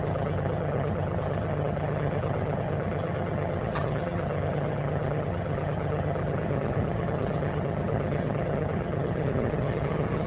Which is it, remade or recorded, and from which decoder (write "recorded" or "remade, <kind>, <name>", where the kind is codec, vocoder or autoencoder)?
remade, vocoder, HiFi-GAN